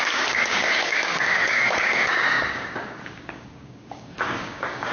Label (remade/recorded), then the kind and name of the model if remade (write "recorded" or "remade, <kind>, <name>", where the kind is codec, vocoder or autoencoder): remade, codec, DAC